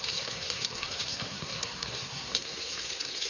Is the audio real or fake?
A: fake